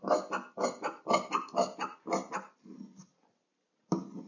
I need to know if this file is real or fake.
real